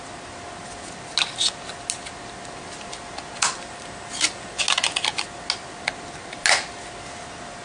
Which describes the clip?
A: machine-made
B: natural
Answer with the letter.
B